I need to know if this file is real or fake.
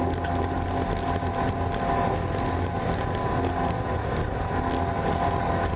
real